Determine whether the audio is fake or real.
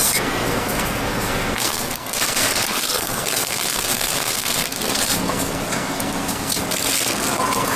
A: fake